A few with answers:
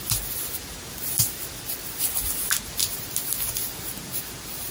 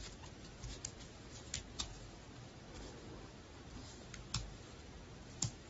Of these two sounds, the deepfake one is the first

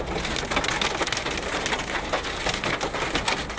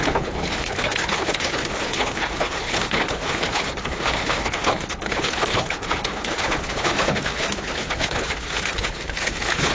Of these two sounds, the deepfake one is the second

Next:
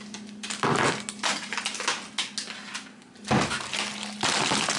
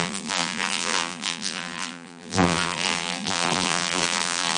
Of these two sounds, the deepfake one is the second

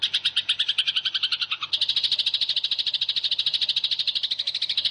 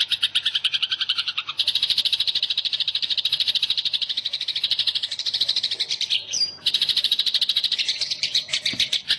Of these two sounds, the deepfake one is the second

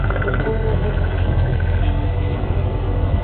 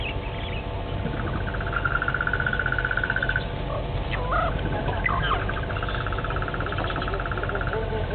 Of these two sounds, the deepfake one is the first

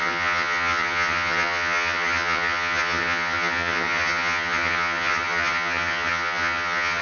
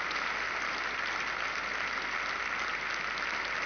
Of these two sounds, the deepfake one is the first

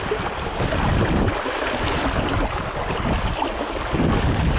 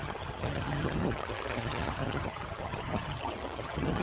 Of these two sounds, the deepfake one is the second